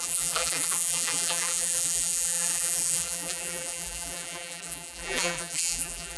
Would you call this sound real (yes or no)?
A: no